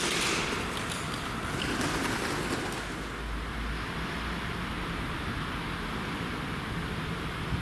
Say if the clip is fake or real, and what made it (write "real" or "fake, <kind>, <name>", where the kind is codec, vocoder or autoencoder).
real